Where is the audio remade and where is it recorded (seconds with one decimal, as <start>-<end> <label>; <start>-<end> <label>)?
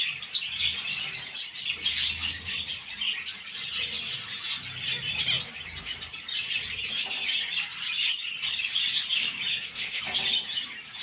0.0-9.5 recorded; 9.5-10.0 remade; 10.0-11.0 recorded